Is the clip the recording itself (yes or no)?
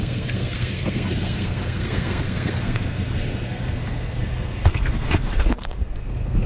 no